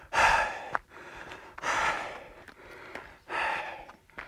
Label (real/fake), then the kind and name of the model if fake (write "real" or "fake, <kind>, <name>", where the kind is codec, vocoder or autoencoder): real